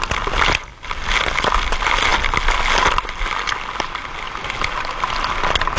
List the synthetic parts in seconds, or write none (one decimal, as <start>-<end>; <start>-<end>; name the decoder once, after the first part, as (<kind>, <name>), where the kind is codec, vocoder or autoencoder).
none